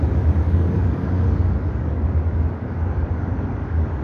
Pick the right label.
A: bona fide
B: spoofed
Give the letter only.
B